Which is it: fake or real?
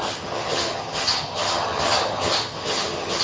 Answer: fake